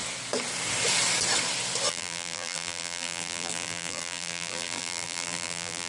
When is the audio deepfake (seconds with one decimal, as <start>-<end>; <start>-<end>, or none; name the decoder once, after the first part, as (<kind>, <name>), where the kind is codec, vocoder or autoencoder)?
1.9-5.9 (vocoder, BigVGAN v2)